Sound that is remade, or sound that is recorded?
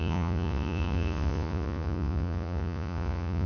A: remade